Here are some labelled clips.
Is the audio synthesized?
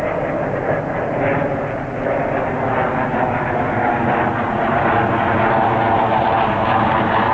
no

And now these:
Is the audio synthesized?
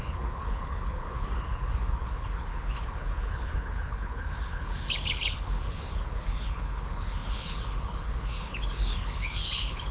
yes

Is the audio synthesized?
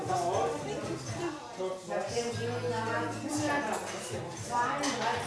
no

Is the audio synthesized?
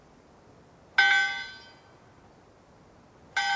no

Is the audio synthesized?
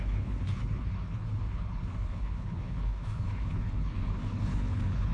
yes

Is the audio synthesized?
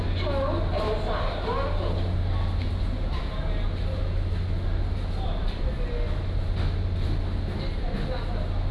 no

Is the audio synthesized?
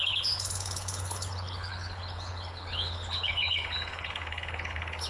yes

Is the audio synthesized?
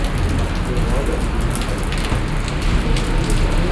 no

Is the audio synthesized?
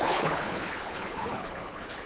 yes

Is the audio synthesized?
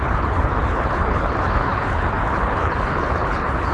yes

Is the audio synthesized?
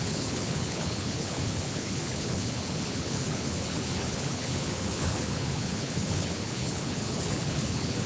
yes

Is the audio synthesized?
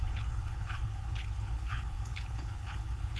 yes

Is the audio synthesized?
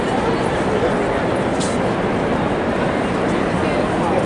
no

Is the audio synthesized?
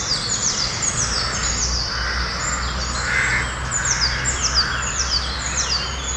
no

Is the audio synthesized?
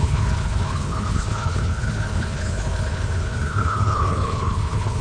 yes